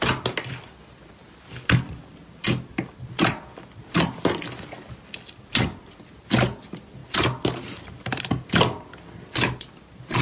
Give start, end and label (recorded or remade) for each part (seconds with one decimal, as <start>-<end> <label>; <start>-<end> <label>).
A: 0.0-10.2 recorded